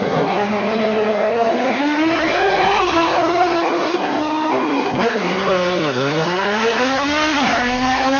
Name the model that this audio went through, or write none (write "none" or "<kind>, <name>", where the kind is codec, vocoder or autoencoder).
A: codec, SNAC